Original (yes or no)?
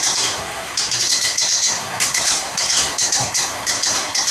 no